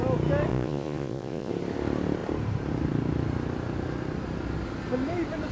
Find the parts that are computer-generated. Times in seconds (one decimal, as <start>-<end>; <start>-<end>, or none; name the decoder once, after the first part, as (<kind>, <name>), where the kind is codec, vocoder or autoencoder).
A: 0.5-1.5 (vocoder, Vocos)